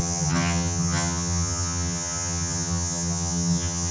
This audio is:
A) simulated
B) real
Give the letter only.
A